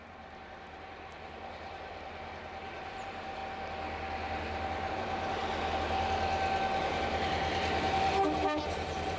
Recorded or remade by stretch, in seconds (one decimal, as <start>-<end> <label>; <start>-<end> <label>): 0.0-3.4 remade; 3.4-4.9 recorded; 4.9-5.4 remade; 5.4-6.8 recorded; 6.8-9.2 remade